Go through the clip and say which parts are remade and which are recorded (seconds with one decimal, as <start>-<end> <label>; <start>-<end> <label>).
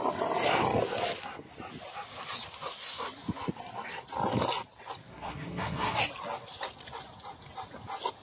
0.0-5.0 recorded; 5.0-6.0 remade; 6.0-8.2 recorded